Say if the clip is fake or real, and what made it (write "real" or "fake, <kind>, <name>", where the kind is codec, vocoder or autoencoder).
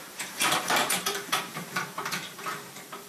fake, vocoder, BigVGAN v2